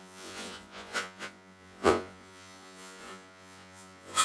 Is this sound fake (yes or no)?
yes